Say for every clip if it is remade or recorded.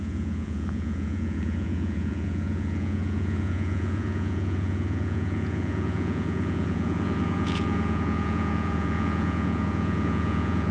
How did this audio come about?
remade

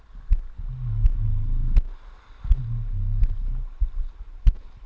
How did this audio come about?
recorded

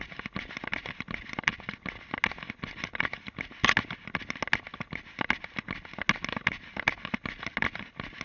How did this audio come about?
recorded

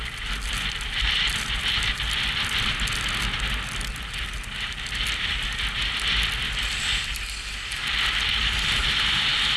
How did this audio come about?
recorded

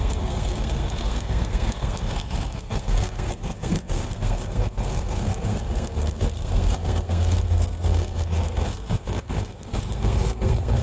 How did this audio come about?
remade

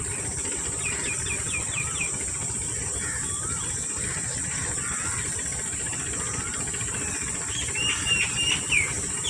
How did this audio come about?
remade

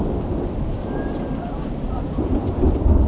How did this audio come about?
recorded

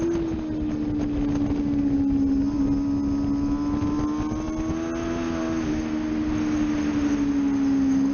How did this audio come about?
recorded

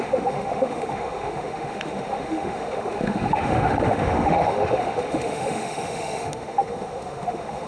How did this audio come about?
remade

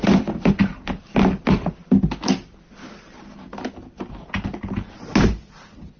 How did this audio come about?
recorded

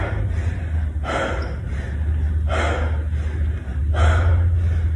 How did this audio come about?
recorded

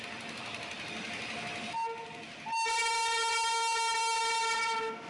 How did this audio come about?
recorded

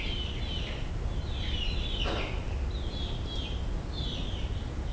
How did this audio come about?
recorded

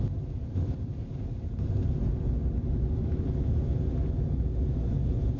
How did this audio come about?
recorded